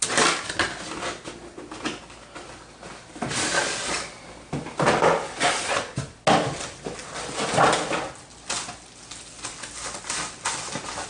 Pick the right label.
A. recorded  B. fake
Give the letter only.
A